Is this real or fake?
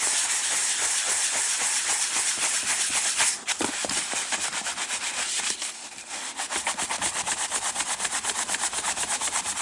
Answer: fake